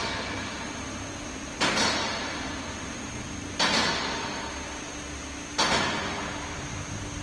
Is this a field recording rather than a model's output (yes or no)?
yes